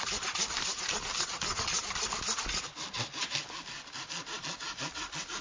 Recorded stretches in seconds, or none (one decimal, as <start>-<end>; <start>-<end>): 0.0-5.4